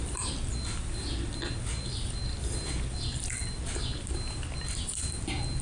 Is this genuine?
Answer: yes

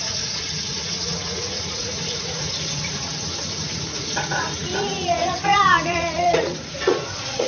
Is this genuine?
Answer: no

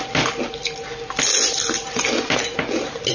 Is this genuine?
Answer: yes